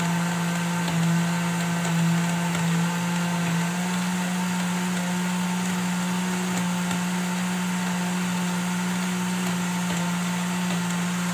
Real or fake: real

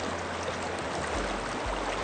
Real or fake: real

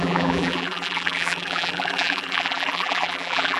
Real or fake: fake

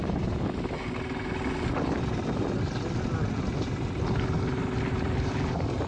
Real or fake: real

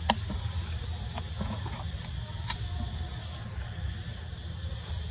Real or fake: real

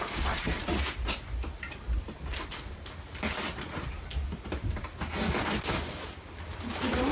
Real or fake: real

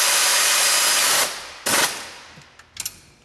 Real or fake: real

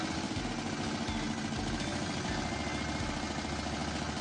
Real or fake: real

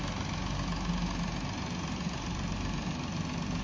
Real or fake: real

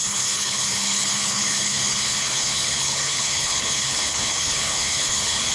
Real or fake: fake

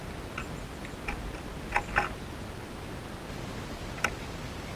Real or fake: real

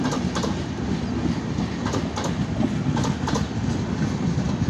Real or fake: real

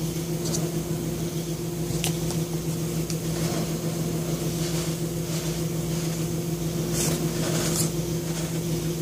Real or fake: fake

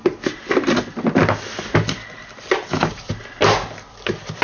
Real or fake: real